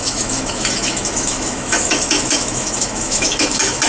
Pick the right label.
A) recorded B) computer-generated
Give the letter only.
B